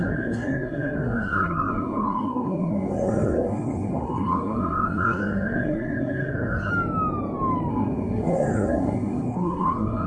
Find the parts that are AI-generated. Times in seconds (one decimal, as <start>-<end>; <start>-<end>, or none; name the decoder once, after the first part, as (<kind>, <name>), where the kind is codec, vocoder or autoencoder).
0.0-6.7 (codec, SNAC); 7.7-10.1